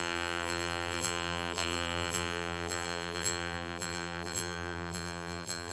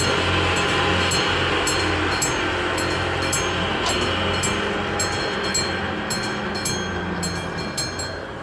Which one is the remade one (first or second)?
first